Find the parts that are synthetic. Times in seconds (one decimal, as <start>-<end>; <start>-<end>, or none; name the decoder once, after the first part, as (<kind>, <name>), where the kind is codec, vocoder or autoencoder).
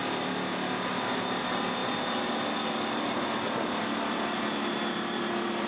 none